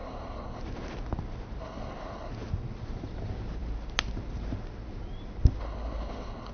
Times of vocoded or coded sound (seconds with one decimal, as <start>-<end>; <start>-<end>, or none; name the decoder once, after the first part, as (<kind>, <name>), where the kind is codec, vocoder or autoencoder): 0.0-0.6 (codec, HILCodec); 1.6-2.3; 5.6-6.5

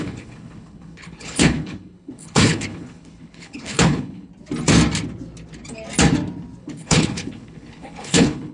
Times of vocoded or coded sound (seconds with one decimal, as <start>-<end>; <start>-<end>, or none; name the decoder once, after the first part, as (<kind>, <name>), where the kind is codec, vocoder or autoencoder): 0.0-4.3 (codec, HILCodec); 6.6-8.5